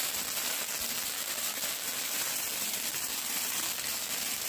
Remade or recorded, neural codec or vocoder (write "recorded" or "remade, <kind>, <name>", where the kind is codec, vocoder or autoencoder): recorded